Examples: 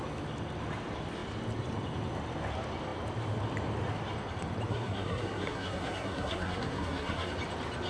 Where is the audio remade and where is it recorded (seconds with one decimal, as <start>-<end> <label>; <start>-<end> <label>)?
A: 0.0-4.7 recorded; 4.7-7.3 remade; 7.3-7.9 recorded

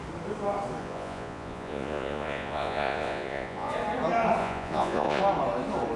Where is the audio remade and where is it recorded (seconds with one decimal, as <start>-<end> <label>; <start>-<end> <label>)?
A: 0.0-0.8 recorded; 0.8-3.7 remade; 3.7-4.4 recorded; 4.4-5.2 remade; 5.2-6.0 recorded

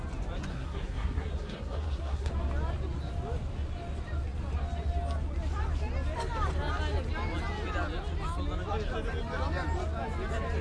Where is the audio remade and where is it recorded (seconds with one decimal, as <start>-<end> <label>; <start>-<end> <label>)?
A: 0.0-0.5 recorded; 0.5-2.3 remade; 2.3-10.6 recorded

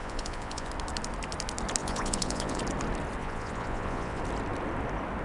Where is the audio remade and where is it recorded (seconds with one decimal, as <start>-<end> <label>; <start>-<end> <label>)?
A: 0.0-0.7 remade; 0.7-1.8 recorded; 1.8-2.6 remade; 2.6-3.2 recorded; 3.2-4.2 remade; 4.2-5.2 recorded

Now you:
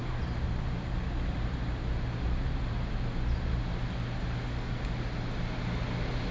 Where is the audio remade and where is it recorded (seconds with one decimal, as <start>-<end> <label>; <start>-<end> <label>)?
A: 0.0-3.0 remade; 3.0-6.3 recorded

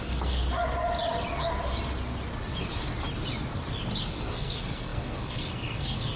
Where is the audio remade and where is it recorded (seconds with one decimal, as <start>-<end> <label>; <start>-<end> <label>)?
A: 0.0-0.4 remade; 0.4-4.0 recorded; 4.0-6.2 remade

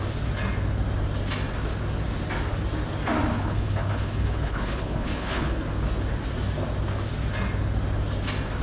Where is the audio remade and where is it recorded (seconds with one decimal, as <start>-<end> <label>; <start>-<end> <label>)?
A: 0.0-3.3 recorded; 3.3-5.6 remade; 5.6-8.6 recorded

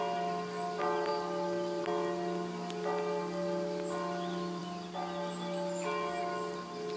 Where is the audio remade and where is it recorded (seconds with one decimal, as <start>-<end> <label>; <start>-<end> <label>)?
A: 0.0-7.0 recorded